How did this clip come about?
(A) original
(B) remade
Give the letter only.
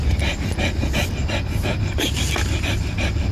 A